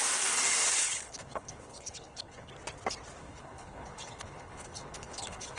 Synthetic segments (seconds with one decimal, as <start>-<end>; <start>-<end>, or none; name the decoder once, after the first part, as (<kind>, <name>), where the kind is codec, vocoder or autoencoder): 0.8-2.5 (codec, HILCodec); 3.2-5.6